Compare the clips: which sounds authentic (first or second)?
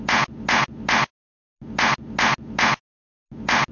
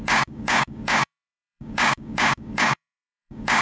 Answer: first